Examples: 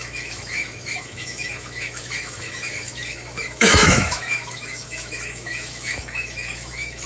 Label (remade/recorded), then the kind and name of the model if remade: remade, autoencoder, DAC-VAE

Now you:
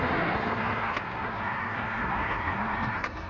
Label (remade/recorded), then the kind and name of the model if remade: remade, codec, SNAC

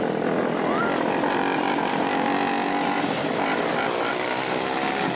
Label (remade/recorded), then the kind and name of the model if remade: recorded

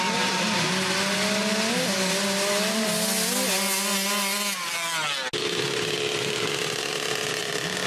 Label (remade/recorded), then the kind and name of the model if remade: recorded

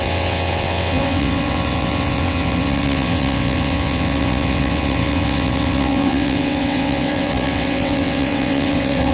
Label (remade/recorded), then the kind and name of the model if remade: remade, vocoder, WaveNeXt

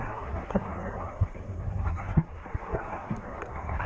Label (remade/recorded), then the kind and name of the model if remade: remade, codec, SNAC